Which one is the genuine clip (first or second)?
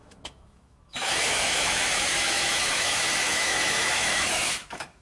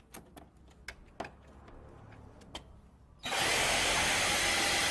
second